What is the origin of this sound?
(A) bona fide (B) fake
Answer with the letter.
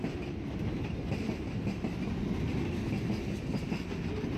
A